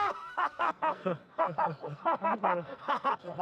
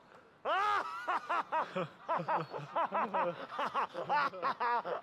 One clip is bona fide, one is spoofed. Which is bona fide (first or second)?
second